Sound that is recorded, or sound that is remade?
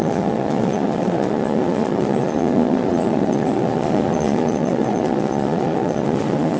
remade